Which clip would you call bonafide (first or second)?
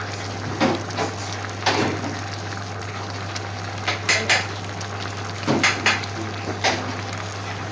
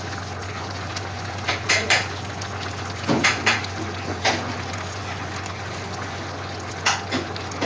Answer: first